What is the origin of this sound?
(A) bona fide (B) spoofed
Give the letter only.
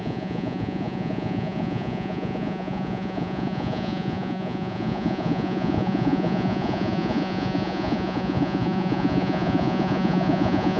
B